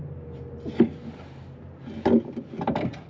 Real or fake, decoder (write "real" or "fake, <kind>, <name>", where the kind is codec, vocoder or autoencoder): real